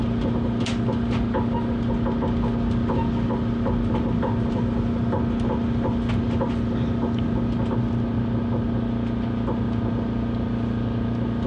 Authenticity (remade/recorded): recorded